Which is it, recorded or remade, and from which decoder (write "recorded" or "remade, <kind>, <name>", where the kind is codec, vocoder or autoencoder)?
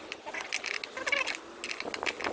recorded